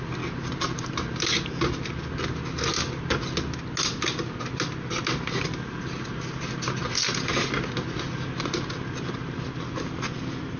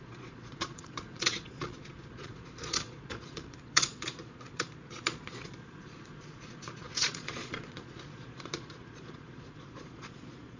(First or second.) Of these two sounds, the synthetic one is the second